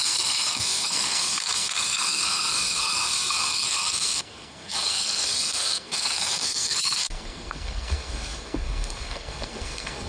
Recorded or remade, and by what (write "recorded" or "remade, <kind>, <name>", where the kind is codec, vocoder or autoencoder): remade, codec, SNAC